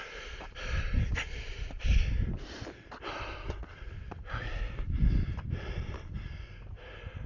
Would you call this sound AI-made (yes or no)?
no